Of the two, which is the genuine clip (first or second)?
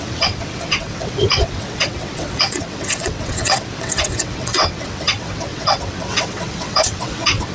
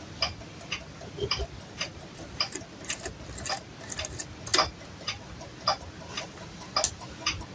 second